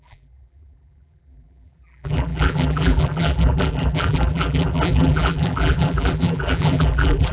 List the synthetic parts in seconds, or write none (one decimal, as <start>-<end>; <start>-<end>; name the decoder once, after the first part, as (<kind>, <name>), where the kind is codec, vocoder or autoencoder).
0.0-7.3 (vocoder, BigVGAN v2)